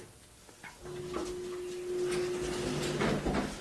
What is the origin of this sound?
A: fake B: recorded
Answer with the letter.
B